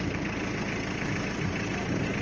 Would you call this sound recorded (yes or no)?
yes